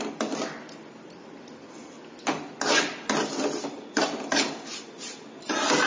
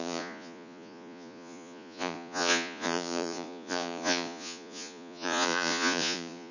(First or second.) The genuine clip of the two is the first